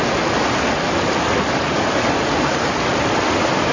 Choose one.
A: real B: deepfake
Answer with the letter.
A